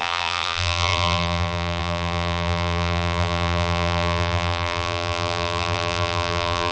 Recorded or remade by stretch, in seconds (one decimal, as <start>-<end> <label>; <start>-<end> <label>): 0.0-6.7 remade